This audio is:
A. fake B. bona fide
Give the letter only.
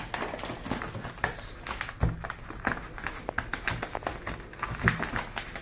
B